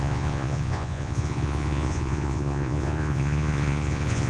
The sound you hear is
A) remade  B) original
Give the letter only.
A